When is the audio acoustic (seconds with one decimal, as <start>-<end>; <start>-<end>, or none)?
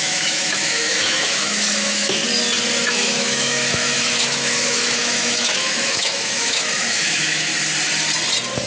2.2-2.9; 7.5-8.7